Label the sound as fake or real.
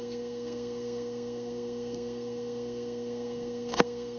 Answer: fake